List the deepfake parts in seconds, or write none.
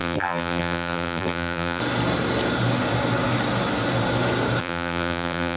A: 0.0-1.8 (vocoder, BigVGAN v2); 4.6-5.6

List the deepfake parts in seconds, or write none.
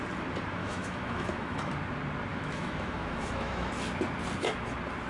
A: 0.6-1.7 (autoencoder, DAC-VAE); 2.3-3.7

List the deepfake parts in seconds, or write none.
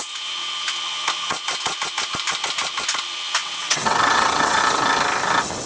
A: 3.4-4.6 (vocoder, WaveNeXt)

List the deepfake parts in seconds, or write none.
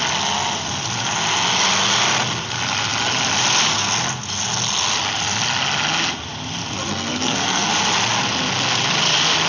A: 6.9-7.7 (codec, SNAC)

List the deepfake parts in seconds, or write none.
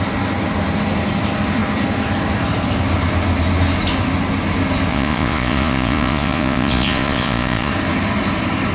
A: 4.9-7.7 (vocoder, Vocos)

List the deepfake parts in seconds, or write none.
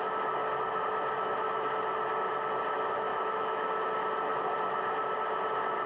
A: 3.1-3.9 (autoencoder, DAC-VAE)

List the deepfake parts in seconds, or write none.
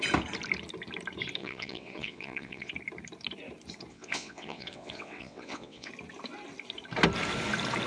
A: 1.4-2.7 (vocoder, WaveNeXt); 3.9-5.9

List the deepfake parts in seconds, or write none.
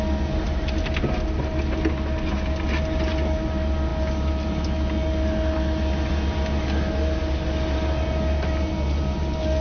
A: none